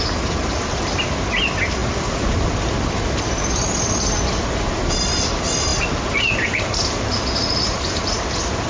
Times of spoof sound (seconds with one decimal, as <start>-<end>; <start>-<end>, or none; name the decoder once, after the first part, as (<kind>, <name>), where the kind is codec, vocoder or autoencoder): none